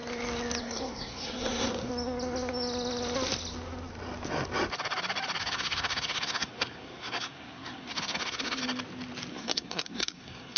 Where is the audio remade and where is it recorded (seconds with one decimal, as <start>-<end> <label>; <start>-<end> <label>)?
0.0-0.6 recorded; 0.6-1.9 remade; 1.9-5.4 recorded; 5.4-8.6 remade; 8.6-9.3 recorded; 9.3-10.6 remade